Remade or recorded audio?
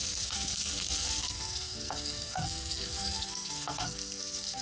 remade